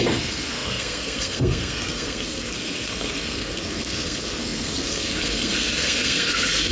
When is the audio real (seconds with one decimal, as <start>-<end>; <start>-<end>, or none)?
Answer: none